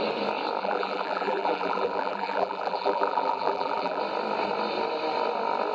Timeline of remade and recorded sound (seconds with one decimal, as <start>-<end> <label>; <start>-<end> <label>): 0.0-0.6 recorded; 0.6-4.0 remade; 4.0-5.7 recorded